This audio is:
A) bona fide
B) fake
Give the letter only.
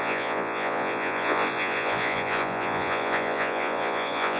B